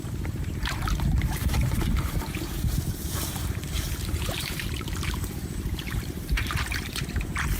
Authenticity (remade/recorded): remade